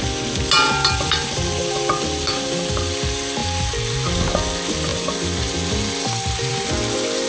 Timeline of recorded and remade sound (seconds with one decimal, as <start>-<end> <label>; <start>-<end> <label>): 0.0-7.3 recorded